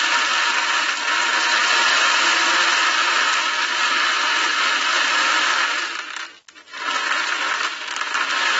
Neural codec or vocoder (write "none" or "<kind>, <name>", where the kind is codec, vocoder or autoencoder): none